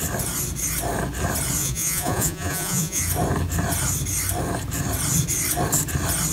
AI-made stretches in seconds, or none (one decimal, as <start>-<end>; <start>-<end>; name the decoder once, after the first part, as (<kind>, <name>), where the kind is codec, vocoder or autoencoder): 1.6-3.0 (vocoder, Vocos)